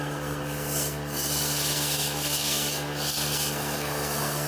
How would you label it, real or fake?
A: fake